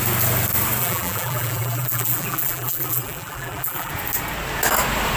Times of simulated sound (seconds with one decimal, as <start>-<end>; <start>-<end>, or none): 0.8-3.9